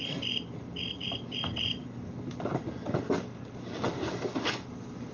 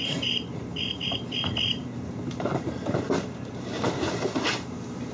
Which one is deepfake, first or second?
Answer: second